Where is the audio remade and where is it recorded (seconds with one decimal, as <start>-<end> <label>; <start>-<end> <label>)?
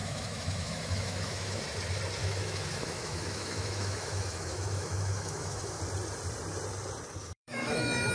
0.0-1.6 remade; 1.6-2.2 recorded; 2.2-5.8 remade; 5.8-7.2 recorded; 7.2-8.1 remade